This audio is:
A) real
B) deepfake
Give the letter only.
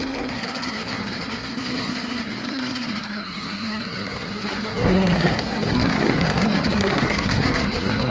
B